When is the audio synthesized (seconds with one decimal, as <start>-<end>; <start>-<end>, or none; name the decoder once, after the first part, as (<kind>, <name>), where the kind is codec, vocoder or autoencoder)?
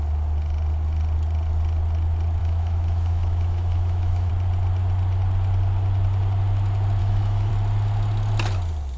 2.4-4.3 (autoencoder, DAC-VAE); 7.0-7.5